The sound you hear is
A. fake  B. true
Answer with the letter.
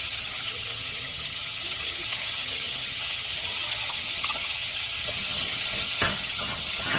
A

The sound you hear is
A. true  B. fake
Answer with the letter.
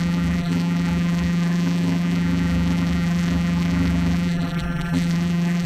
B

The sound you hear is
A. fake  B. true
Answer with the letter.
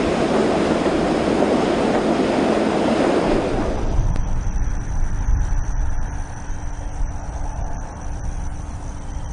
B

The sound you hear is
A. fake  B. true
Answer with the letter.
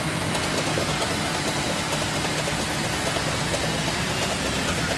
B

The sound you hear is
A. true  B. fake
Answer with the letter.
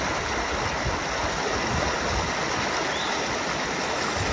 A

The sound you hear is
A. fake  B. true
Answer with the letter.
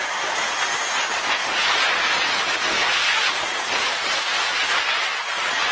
B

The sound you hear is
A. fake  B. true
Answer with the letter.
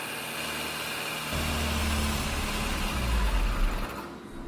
B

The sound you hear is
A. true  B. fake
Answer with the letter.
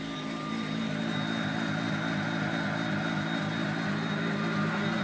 A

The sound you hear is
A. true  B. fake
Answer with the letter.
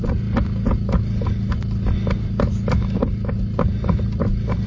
A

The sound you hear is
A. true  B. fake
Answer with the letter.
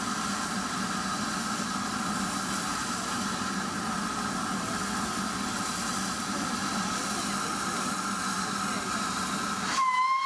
A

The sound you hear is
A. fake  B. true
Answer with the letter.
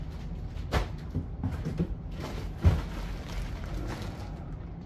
A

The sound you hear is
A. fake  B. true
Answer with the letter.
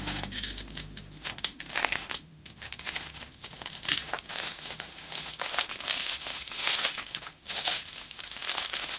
A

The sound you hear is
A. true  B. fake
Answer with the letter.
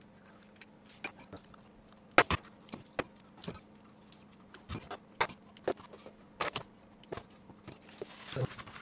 A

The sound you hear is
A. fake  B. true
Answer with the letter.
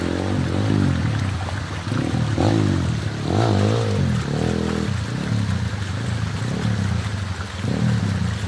B